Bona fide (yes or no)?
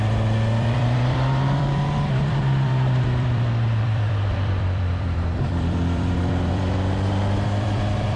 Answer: no